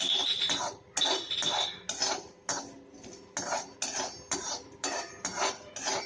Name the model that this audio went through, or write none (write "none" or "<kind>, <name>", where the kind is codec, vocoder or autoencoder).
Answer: none